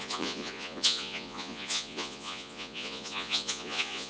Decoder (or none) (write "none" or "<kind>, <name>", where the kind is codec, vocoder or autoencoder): vocoder, Vocos